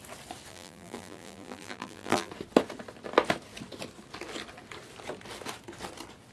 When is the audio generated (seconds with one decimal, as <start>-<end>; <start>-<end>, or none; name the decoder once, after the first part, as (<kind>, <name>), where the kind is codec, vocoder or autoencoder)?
0.5-2.3 (vocoder, BigVGAN v2)